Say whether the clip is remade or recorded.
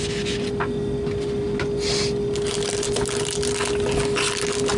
recorded